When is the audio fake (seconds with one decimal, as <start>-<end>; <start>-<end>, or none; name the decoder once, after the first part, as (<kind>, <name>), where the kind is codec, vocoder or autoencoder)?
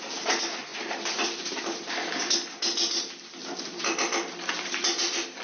0.7-1.9 (vocoder, BigVGAN v2); 3.4-5.4